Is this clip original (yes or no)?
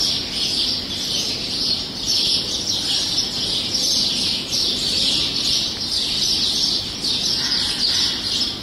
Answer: yes